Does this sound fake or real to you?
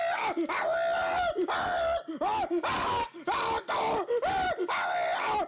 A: real